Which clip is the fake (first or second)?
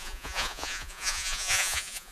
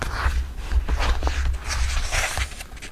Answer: first